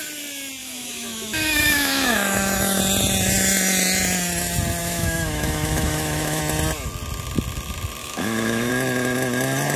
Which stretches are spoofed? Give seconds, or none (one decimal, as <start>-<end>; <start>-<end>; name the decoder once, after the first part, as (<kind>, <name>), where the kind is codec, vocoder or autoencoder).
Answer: 0.6-2.8 (autoencoder, DAC-VAE); 4.8-6.4; 8.0-8.7